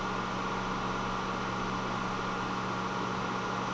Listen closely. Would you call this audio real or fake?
real